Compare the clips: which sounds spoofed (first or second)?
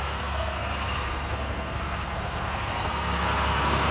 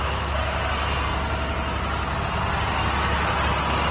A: first